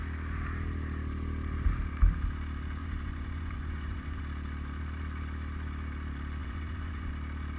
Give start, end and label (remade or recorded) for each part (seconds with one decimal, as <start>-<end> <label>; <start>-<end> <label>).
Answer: 0.0-2.8 recorded; 2.8-4.2 remade; 4.2-6.4 recorded; 6.4-7.1 remade; 7.1-7.6 recorded